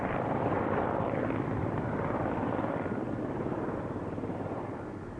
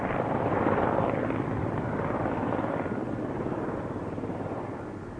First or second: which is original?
second